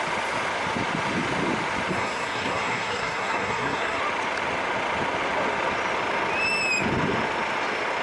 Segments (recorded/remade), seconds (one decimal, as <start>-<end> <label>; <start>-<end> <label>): 0.0-1.9 recorded; 1.9-4.0 remade; 4.0-8.0 recorded